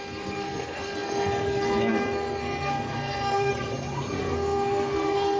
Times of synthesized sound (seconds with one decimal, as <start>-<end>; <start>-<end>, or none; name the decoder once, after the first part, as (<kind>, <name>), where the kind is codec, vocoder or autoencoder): 0.0-3.5 (codec, SNAC); 4.2-5.4

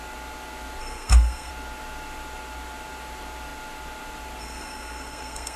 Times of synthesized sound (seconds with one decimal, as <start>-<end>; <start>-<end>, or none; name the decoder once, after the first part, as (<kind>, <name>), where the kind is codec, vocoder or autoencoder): 0.8-1.5 (codec, SNAC); 4.4-5.6